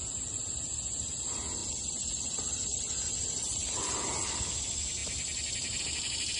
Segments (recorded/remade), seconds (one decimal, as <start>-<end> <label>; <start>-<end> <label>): 0.0-6.4 recorded